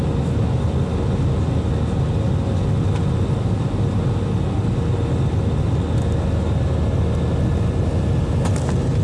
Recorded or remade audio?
recorded